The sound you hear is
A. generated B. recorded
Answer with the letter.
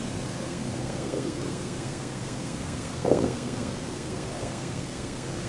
A